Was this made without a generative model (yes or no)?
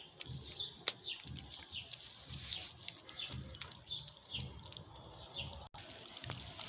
yes